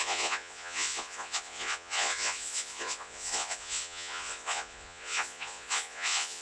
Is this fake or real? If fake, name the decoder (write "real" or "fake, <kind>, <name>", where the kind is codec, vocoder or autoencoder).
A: fake, vocoder, Vocos